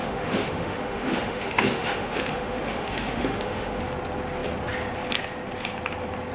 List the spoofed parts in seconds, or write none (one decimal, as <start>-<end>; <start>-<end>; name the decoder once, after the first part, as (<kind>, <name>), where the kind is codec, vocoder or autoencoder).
0.0-3.8 (autoencoder, DAC-VAE)